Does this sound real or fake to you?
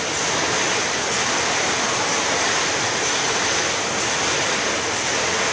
real